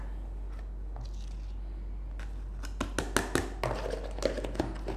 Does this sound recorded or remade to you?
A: recorded